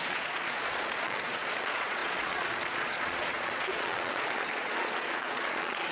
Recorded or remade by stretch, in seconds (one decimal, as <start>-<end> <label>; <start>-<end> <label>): 0.0-5.9 remade